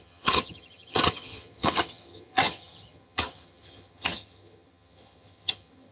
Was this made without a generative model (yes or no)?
no